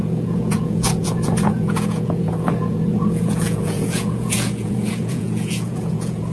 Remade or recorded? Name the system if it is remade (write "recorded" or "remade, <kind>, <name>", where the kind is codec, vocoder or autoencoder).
remade, vocoder, Vocos